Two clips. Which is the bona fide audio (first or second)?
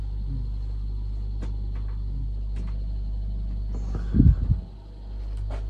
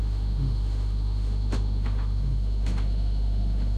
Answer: first